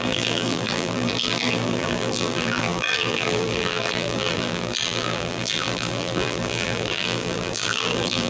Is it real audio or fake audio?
fake